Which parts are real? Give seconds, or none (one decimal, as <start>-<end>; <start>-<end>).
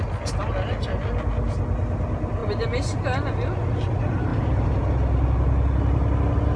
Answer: 0.0-4.3; 4.9-6.6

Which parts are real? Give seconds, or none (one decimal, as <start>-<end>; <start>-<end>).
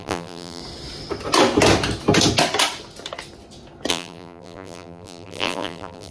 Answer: 0.6-3.9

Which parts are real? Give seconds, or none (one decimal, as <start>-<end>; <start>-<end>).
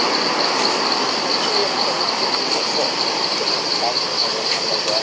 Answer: 0.0-4.2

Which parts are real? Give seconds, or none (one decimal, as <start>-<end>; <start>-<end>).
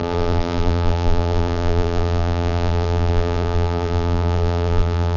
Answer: none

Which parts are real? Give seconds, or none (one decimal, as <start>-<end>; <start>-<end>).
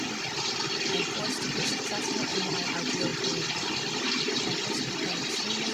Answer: 0.0-5.7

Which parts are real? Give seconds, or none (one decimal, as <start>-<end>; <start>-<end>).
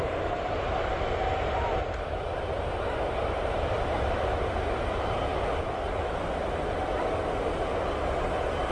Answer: 0.0-8.7